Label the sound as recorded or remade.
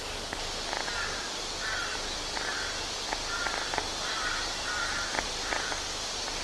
recorded